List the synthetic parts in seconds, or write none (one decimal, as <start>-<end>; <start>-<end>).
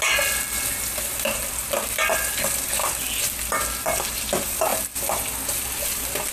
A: none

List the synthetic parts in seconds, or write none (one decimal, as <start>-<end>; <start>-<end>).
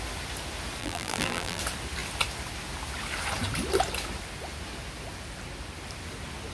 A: 0.8-1.6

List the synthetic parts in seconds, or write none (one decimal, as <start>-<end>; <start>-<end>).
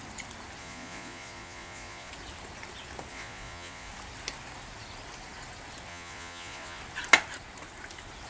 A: 0.6-2.1; 3.1-3.9; 5.9-6.8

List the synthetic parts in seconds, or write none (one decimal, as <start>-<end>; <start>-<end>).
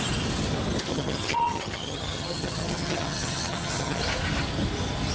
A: 0.9-4.0